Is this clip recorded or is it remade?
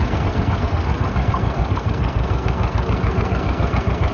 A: remade